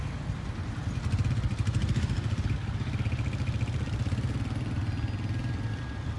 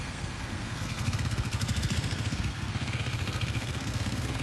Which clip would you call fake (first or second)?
second